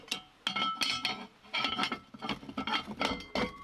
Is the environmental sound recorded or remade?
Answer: recorded